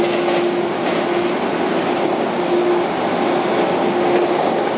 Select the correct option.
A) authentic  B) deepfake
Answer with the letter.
A